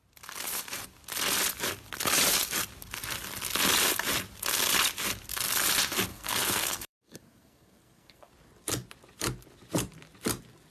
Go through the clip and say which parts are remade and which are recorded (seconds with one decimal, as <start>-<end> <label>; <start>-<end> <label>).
0.0-6.1 recorded; 6.1-8.3 remade; 8.3-10.7 recorded

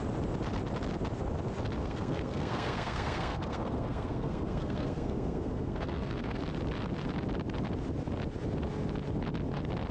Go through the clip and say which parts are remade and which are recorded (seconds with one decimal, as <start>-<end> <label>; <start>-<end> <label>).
0.0-1.8 recorded; 1.8-6.4 remade; 6.4-9.9 recorded